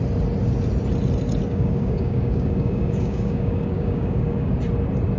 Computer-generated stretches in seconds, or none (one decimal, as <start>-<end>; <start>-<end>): 1.5-4.6